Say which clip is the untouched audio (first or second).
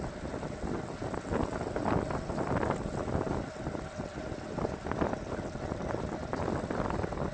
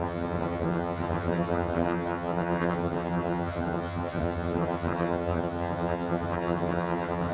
first